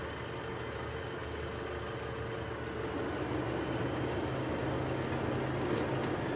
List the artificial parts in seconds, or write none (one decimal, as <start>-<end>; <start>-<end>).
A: none